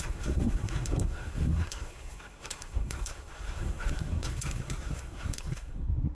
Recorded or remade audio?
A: remade